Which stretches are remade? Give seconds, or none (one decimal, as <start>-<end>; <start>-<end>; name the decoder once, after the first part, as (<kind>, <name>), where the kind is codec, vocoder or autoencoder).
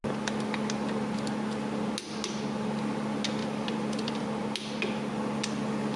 3.4-4.2 (vocoder, BigVGAN v2)